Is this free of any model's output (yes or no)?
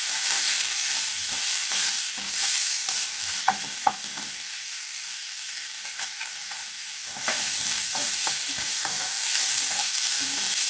no